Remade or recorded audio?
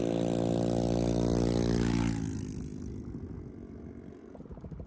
recorded